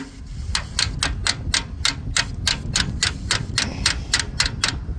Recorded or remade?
recorded